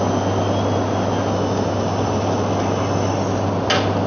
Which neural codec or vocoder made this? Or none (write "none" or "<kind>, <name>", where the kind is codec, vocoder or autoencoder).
none